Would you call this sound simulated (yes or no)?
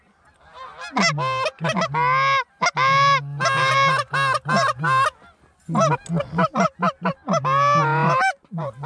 no